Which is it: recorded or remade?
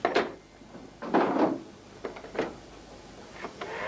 recorded